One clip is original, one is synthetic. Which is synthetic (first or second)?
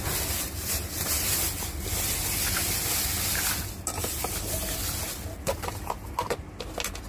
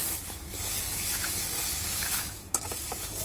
second